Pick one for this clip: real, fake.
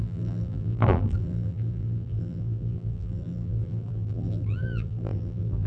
fake